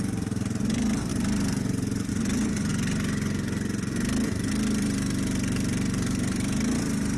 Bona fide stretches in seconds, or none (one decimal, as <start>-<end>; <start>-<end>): 1.1-2.1